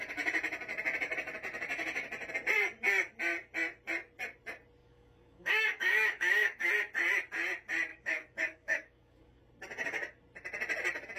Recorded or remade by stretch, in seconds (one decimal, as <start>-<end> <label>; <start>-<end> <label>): 0.0-4.8 recorded; 4.8-6.7 remade; 6.7-7.9 recorded; 7.9-9.4 remade; 9.4-11.2 recorded